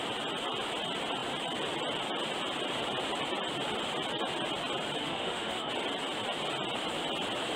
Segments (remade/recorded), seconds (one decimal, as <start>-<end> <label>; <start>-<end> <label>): 0.0-5.0 recorded; 5.0-5.7 remade; 5.7-7.6 recorded